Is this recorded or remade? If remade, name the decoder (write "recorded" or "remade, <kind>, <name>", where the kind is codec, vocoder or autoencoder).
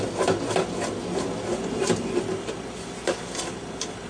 recorded